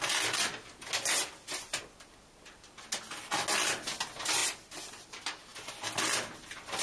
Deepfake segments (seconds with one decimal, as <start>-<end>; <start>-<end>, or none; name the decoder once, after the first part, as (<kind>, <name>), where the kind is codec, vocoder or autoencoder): none